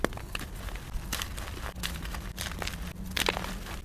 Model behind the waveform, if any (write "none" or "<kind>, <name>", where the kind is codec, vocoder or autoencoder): none